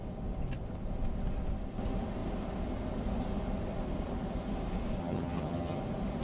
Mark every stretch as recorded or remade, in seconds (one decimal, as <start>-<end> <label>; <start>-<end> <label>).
0.0-5.0 recorded; 5.0-5.8 remade; 5.8-6.2 recorded